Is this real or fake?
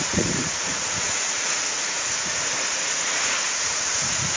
fake